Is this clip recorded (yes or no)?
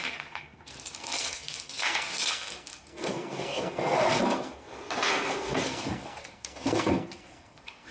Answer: no